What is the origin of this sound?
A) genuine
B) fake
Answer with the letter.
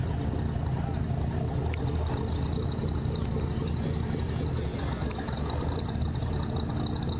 A